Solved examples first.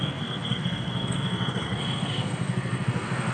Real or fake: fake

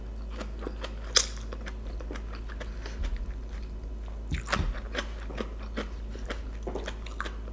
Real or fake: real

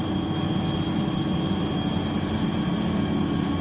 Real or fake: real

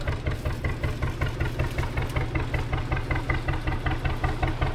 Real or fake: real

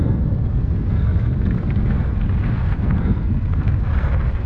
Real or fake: fake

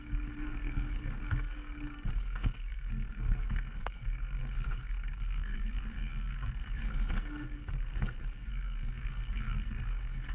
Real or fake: fake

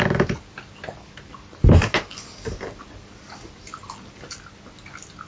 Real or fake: real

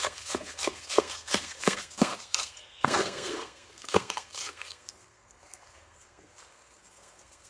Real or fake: fake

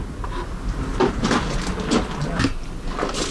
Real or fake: real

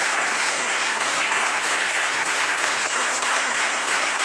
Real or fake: fake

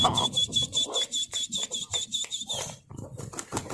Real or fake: real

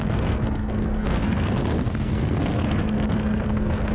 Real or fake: fake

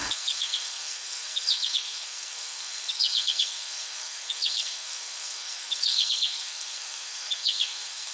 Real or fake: fake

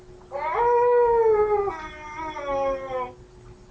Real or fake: real